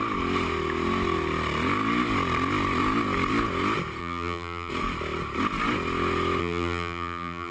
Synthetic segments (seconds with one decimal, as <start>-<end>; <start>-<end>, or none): 4.0-4.7; 6.4-7.5